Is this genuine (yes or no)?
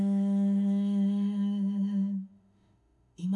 no